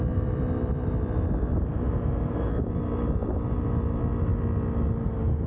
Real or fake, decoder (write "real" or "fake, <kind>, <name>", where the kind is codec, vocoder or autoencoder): real